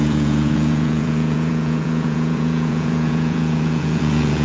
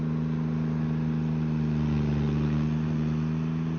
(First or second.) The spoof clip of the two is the first